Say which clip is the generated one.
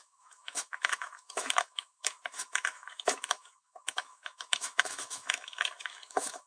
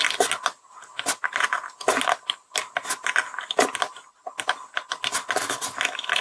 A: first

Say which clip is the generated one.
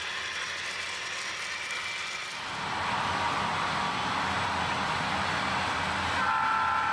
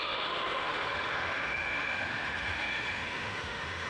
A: second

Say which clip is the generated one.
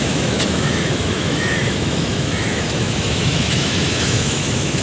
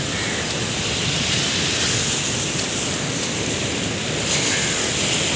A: first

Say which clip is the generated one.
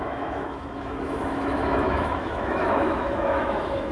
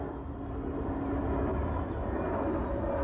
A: first